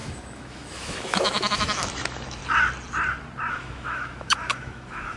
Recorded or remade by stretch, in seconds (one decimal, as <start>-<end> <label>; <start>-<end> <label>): 0.0-2.4 remade; 2.4-3.5 recorded; 3.5-5.2 remade